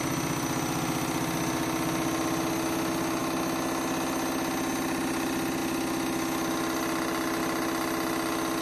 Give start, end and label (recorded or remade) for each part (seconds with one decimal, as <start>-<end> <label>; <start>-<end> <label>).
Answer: 0.0-8.6 recorded